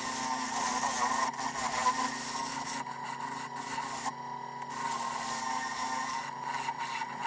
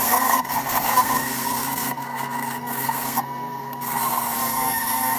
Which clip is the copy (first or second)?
second